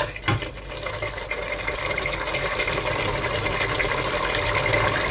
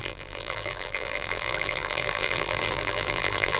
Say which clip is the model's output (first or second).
second